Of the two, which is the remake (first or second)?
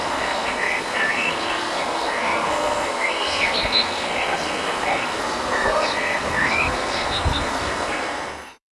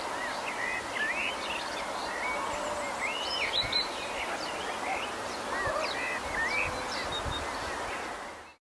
first